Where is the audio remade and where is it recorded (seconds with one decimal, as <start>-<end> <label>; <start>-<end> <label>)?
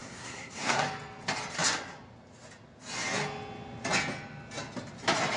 0.0-0.8 remade; 0.8-5.4 recorded